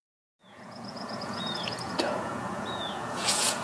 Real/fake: fake